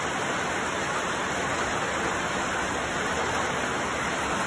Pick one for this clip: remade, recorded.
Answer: recorded